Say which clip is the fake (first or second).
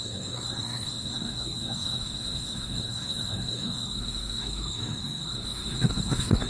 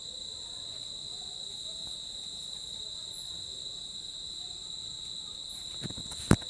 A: first